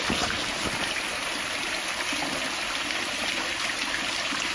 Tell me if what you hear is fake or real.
real